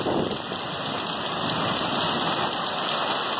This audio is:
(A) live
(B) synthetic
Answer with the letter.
A